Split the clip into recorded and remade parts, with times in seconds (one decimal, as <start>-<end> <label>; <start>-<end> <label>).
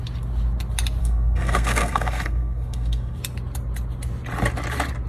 0.0-1.0 recorded; 1.0-3.2 remade; 3.2-5.1 recorded